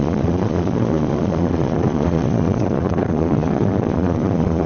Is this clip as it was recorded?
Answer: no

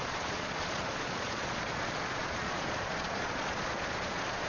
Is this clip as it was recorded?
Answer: no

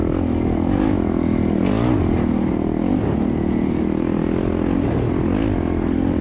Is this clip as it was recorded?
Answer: yes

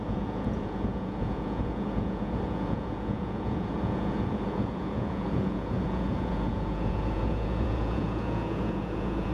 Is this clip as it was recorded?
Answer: no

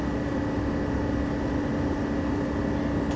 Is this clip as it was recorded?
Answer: yes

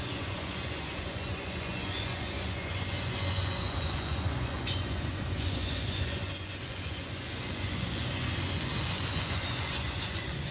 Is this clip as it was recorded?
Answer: no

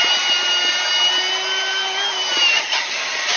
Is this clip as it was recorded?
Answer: yes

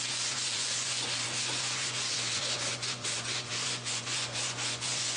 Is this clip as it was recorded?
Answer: no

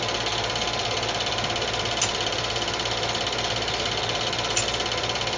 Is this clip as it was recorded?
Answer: yes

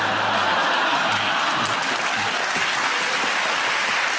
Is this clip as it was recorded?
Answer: yes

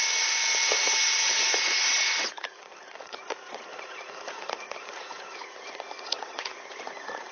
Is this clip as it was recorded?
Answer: no